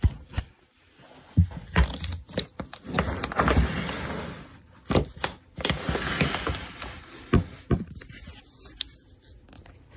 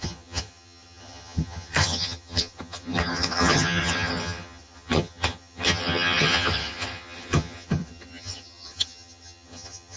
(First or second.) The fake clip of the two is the second